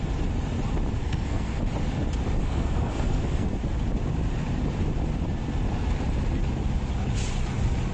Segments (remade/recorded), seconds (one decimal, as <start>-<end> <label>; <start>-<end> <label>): 0.0-1.0 recorded; 1.0-1.6 remade; 1.6-2.4 recorded; 2.4-3.5 remade; 3.5-7.9 recorded